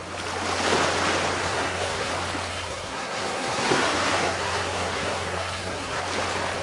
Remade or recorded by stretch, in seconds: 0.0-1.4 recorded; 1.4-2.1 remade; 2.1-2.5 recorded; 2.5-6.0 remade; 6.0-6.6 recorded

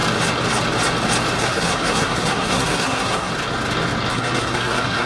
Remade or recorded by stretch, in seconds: 0.0-1.4 recorded; 1.4-3.3 remade; 3.3-4.1 recorded; 4.1-5.1 remade

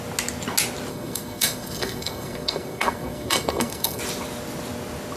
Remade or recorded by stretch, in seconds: 0.0-0.9 recorded; 0.9-4.0 remade; 4.0-5.2 recorded

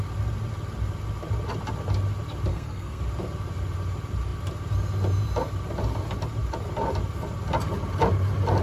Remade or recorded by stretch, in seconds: 0.0-2.5 recorded; 2.5-3.0 remade; 3.0-8.6 recorded